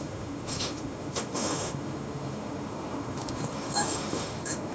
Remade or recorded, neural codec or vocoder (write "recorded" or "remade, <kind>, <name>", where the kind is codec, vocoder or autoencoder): remade, autoencoder, DAC-VAE